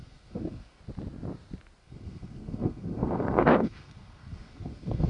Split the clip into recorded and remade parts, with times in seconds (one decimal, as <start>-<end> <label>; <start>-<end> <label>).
0.0-0.8 remade; 0.8-1.8 recorded; 1.8-5.1 remade